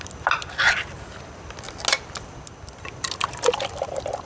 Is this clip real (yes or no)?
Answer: yes